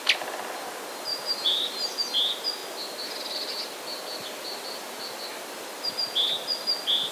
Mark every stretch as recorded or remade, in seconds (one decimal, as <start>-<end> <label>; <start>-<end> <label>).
0.0-1.1 recorded; 1.1-2.0 remade; 2.0-7.1 recorded